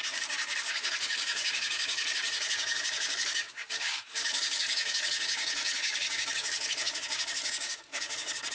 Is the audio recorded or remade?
remade